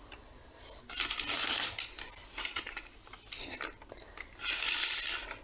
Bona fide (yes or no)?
yes